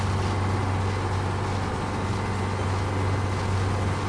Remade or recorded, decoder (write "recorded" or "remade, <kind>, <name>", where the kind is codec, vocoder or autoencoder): recorded